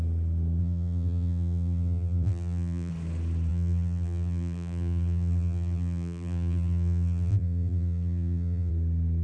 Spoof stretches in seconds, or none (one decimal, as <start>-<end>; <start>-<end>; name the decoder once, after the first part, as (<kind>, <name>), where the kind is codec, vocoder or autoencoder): 0.6-2.9 (vocoder, BigVGAN v2); 3.5-8.7